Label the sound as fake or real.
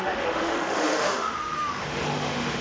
fake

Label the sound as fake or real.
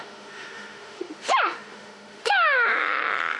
fake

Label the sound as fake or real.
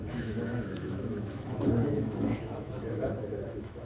fake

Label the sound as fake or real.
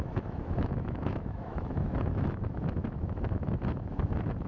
fake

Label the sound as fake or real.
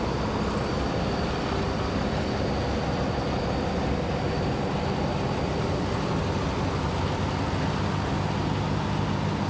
real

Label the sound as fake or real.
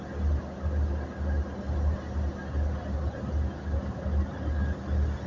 real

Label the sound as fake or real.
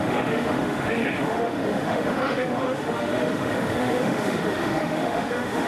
fake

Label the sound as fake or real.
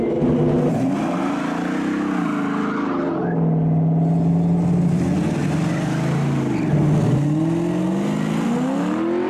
real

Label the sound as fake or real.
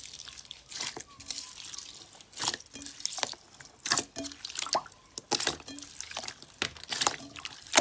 real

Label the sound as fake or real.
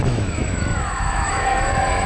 fake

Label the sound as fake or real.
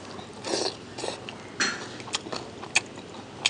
real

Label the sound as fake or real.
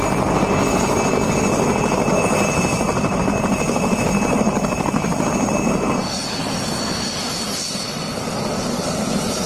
real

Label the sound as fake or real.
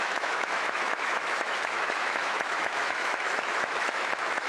fake